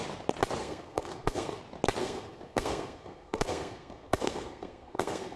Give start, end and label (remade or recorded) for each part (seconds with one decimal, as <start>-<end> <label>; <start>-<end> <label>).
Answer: 0.0-0.6 recorded; 0.6-1.6 remade; 1.6-2.0 recorded; 2.0-5.4 remade